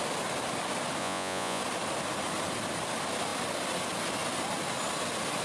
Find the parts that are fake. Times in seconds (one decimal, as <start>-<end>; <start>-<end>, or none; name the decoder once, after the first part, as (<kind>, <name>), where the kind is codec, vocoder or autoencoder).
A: 1.0-1.6 (vocoder, Vocos)